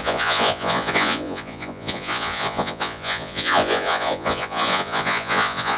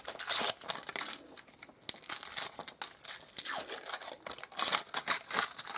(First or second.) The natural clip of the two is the second